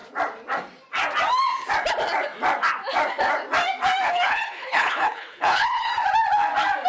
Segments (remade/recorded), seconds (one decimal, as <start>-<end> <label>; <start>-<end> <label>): 0.0-4.1 recorded; 4.1-5.9 remade; 5.9-6.9 recorded